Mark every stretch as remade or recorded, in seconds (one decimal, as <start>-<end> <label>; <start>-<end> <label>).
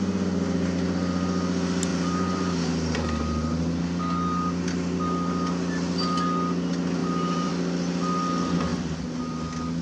0.0-1.9 recorded; 1.9-3.8 remade; 3.8-7.0 recorded; 7.0-7.5 remade; 7.5-9.8 recorded